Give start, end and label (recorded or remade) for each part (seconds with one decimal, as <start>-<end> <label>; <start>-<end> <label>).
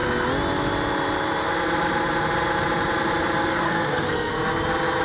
0.0-3.5 recorded; 3.5-4.3 remade; 4.3-5.0 recorded